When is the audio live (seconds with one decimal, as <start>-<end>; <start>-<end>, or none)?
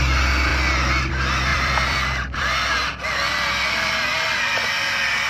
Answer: 0.0-1.5; 4.7-5.3